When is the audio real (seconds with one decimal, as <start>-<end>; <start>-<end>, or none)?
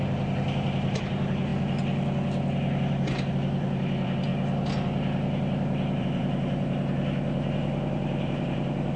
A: 4.3-6.0